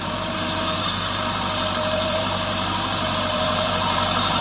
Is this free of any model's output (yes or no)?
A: no